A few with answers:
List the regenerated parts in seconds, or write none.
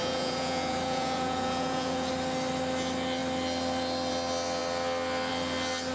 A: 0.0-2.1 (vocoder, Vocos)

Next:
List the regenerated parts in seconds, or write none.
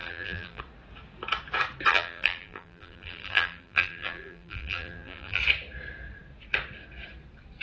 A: 0.0-0.6 (vocoder, BigVGAN v2); 1.9-5.4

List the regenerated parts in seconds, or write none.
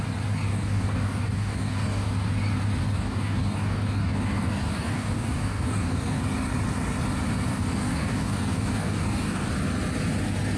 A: 0.5-2.1 (codec, DAC); 2.8-6.2; 7.5-9.5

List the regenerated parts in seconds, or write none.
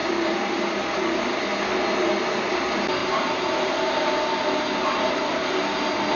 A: 0.0-1.4 (vocoder, BigVGAN v2); 3.0-5.8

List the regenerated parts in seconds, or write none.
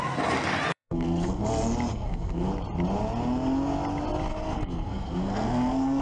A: 0.7-1.4 (codec, SNAC); 1.9-2.5; 4.3-6.0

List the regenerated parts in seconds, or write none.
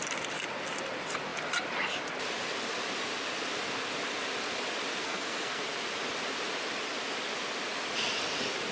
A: 5.0-5.6 (codec, SNAC)